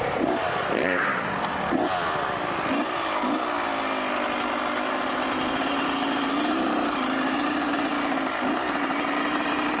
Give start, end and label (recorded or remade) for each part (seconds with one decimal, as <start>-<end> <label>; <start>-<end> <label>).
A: 0.0-1.1 remade; 1.1-5.1 recorded; 5.1-7.9 remade; 7.9-8.7 recorded; 8.7-9.8 remade